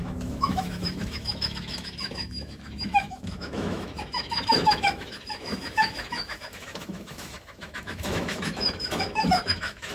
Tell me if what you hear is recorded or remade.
remade